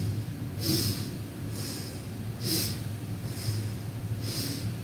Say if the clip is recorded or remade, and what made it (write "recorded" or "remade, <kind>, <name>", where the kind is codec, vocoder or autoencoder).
recorded